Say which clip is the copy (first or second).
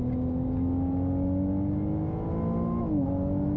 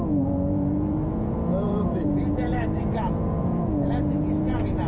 second